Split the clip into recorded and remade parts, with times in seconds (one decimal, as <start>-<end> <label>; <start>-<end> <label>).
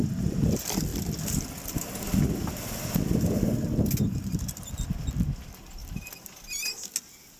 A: 0.0-7.4 recorded